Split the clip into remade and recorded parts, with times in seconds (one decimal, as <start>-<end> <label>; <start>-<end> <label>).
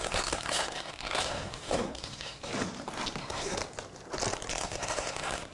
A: 0.0-2.5 remade; 2.5-3.2 recorded; 3.2-3.6 remade; 3.6-4.5 recorded; 4.5-5.5 remade